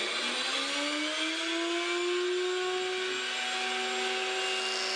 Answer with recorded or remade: recorded